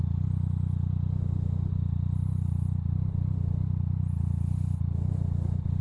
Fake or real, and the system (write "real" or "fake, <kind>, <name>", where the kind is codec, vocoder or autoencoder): real